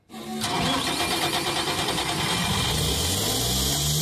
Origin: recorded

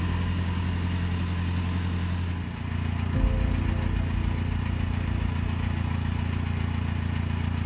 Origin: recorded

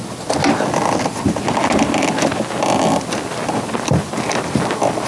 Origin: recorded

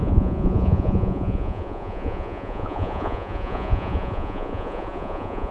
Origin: remade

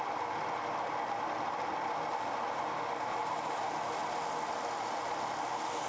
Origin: recorded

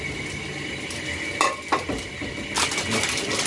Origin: recorded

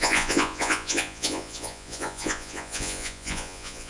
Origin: remade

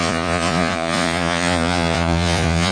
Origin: remade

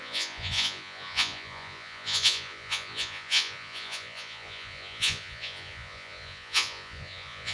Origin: remade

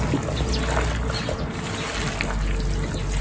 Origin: recorded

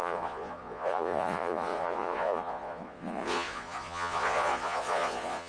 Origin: remade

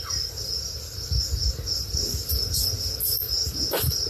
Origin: recorded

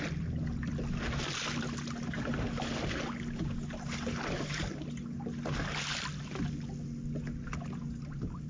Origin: recorded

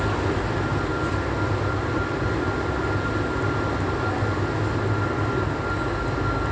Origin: recorded